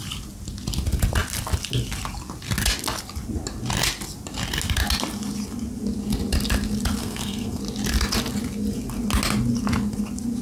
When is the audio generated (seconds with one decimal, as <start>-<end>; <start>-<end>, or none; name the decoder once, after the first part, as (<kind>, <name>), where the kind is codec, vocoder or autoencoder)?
7.0-7.6 (codec, SNAC)